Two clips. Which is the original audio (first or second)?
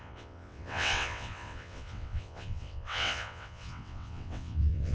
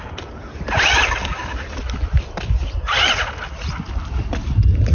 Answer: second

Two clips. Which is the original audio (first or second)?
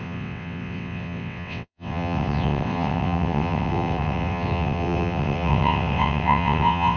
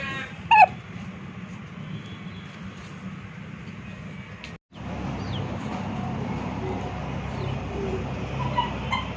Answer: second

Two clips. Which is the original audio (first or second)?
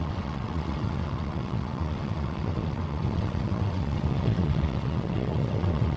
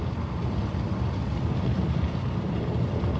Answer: second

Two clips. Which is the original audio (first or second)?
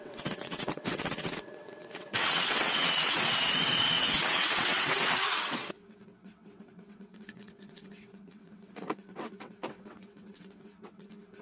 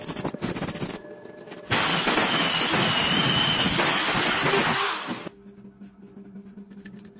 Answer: second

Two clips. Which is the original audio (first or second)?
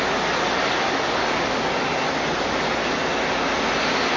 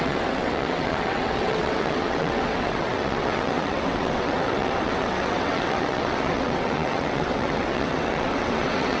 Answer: first